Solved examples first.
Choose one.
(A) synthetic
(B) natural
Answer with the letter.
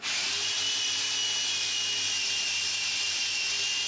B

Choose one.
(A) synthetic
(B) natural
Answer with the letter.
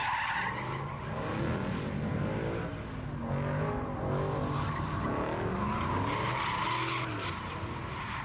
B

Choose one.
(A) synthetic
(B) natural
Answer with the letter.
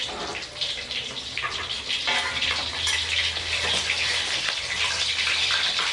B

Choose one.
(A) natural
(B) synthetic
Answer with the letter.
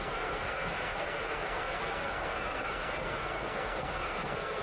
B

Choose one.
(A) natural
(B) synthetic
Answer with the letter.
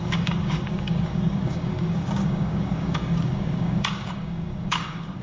B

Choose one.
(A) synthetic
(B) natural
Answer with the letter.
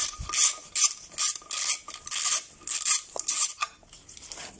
B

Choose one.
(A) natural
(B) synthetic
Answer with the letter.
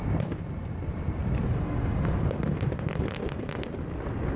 B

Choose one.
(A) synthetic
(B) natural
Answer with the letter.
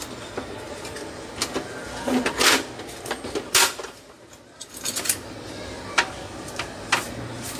B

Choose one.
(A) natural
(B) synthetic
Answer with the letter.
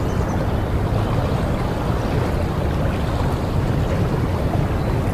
A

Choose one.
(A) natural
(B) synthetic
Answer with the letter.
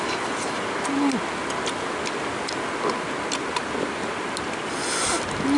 A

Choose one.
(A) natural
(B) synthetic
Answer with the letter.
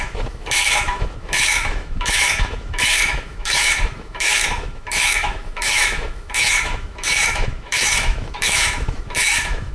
B